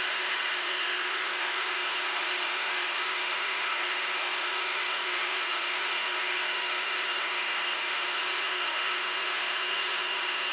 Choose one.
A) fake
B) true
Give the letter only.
A